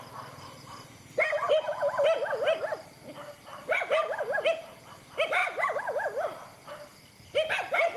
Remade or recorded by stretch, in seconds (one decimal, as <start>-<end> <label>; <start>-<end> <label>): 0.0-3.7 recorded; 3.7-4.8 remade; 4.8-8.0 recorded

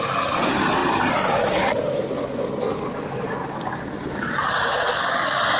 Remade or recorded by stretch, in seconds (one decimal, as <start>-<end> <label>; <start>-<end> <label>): 0.0-5.6 recorded

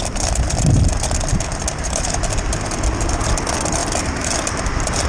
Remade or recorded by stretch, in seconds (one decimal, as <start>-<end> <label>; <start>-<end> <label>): 0.0-1.5 recorded; 1.5-2.2 remade; 2.2-5.1 recorded